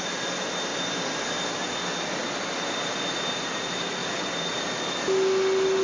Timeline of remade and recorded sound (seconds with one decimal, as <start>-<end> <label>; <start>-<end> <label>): 0.0-0.7 recorded; 0.7-1.4 remade; 1.4-4.0 recorded; 4.0-4.8 remade; 4.8-5.8 recorded